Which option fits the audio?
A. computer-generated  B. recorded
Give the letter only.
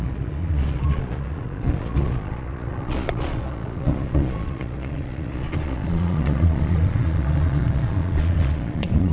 A